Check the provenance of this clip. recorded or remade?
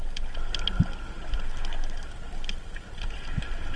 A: recorded